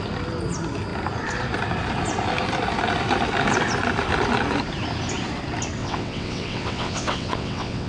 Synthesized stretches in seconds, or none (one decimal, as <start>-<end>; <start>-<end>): 5.8-7.9